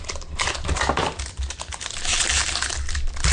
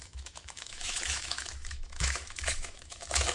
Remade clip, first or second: second